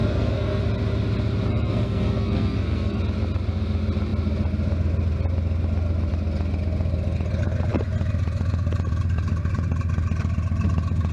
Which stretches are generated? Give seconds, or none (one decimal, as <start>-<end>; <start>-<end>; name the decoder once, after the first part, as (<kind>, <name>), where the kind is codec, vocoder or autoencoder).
0.0-0.6 (codec, SNAC); 1.5-3.0